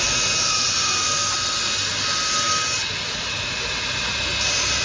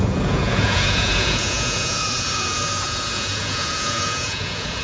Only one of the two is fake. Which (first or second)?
second